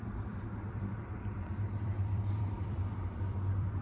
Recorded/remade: remade